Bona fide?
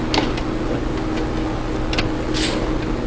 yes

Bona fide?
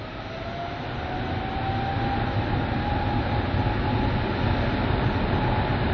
yes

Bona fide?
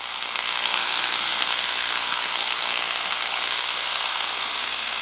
no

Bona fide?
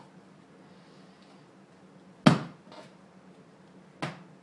yes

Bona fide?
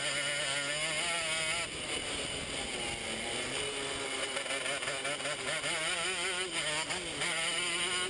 yes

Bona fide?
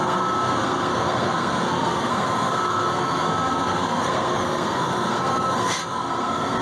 no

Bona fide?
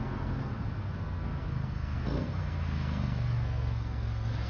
no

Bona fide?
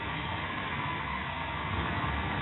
no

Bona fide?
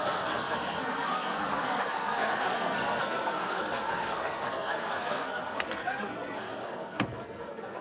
no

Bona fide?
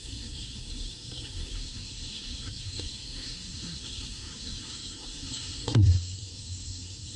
no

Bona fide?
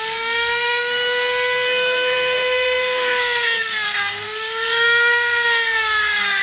no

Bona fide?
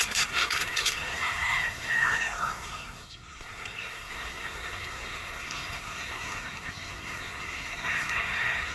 no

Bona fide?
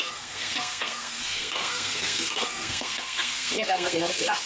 no